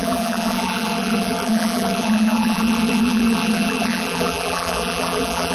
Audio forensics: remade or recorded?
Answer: remade